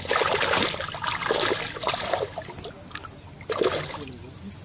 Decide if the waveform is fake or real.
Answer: real